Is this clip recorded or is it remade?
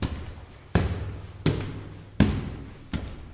recorded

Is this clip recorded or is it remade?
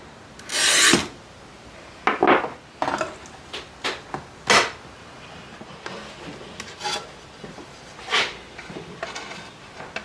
recorded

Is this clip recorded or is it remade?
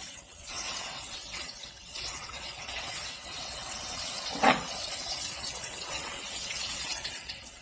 remade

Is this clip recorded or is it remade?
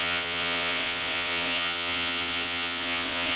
remade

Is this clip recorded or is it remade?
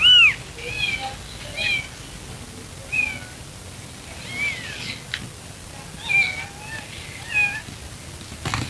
recorded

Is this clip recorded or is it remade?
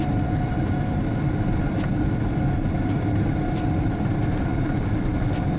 recorded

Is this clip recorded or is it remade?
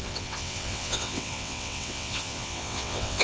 remade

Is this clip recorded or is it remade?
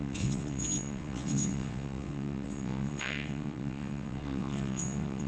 remade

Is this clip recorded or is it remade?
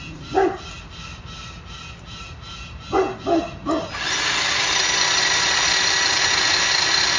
recorded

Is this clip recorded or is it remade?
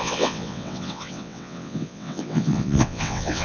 remade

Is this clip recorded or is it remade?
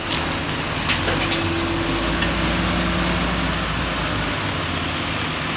recorded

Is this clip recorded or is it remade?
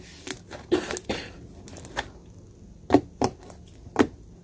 recorded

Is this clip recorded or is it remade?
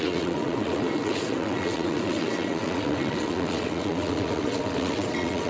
remade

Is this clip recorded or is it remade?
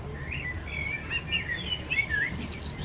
recorded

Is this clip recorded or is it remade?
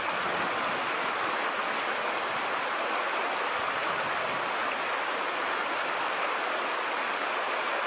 recorded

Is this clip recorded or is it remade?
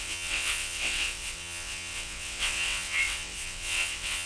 remade